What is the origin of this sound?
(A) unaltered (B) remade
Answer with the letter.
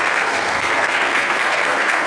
B